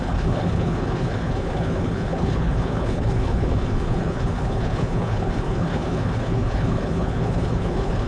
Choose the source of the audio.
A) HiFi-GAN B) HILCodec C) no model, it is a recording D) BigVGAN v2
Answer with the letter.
B